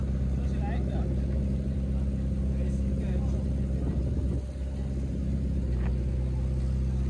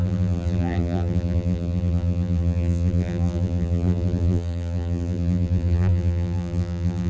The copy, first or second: second